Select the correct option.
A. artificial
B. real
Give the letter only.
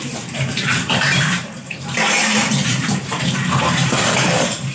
A